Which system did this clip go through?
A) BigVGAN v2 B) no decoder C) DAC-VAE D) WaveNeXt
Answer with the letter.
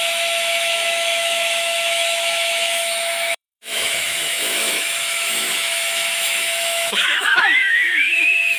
C